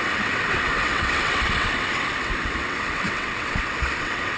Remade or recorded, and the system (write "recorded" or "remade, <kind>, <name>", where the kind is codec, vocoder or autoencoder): remade, vocoder, WaveNeXt